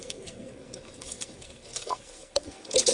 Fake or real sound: fake